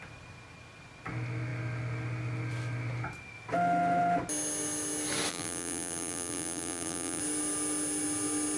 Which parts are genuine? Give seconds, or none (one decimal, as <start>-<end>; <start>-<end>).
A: 0.0-5.3; 7.2-8.6